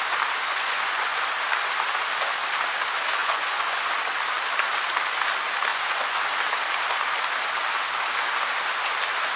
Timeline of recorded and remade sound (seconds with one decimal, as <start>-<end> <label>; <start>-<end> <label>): 0.0-0.4 recorded; 0.4-1.3 remade; 1.3-3.2 recorded; 3.2-3.9 remade; 3.9-5.7 recorded; 5.7-6.2 remade; 6.2-9.4 recorded